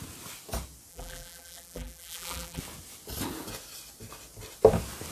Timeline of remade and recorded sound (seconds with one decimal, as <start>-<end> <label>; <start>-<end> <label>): 0.0-0.9 recorded; 0.9-2.6 remade; 2.6-5.1 recorded